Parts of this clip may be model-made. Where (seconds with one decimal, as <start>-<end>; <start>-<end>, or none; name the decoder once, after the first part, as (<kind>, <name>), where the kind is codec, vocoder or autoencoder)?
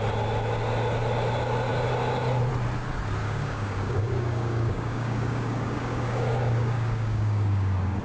3.2-8.0 (codec, DAC)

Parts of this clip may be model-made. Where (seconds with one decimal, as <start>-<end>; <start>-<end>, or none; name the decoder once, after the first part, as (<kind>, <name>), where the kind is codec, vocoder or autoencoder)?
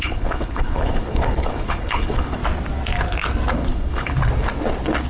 0.0-2.4 (codec, HILCodec); 3.5-4.2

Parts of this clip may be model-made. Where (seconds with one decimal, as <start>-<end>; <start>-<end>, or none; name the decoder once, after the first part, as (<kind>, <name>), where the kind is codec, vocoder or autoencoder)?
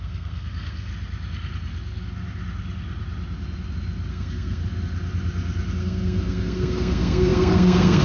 0.0-0.9 (codec, SNAC); 4.1-4.6; 5.8-8.0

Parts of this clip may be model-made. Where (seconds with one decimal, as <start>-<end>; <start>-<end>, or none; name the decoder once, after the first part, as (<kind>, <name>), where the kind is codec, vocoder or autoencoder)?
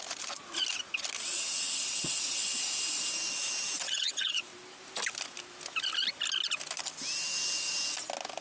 1.2-2.5 (vocoder, WaveNeXt); 3.8-4.5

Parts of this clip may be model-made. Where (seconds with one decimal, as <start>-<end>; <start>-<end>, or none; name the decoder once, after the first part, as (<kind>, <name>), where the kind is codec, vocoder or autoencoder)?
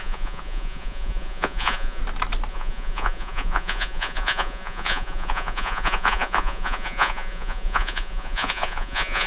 0.0-2.0 (vocoder, Vocos); 2.5-9.3